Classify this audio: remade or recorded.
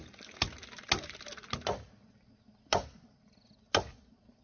recorded